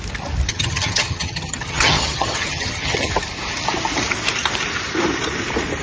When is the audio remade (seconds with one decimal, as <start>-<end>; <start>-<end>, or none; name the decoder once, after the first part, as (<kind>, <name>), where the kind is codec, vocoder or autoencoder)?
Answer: 0.5-3.1 (vocoder, HiFi-GAN)